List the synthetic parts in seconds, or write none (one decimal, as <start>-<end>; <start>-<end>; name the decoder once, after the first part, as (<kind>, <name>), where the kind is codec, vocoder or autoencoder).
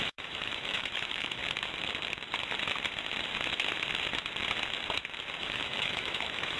0.0-1.4 (autoencoder, DAC-VAE); 5.4-6.6